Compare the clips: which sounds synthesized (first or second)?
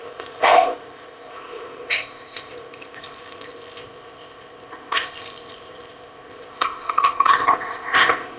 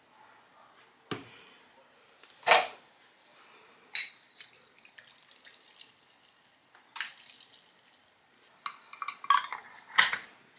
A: first